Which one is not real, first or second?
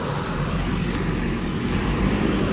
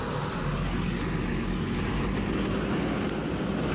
first